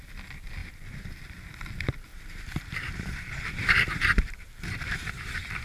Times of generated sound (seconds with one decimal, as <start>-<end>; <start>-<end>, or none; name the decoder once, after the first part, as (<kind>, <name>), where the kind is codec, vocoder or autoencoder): 0.6-1.2 (vocoder, BigVGAN v2); 2.1-5.6